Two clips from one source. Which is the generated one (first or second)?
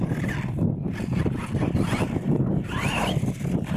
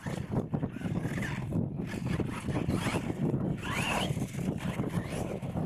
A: second